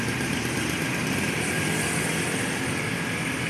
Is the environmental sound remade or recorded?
recorded